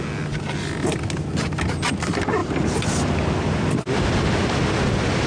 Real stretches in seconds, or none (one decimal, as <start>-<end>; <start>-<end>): 0.0-5.3